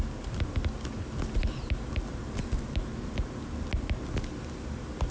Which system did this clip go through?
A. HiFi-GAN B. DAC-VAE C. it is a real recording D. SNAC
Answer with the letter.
C